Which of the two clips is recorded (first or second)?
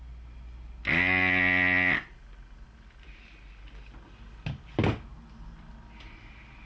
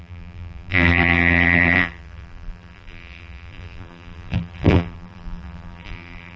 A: first